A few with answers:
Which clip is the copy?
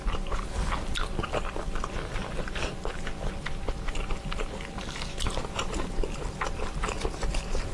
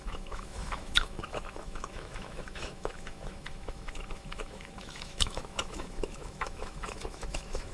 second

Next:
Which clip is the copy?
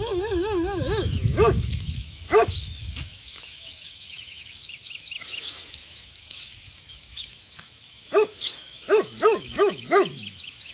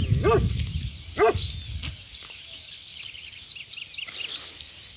first